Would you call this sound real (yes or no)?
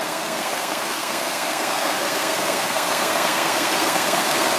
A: no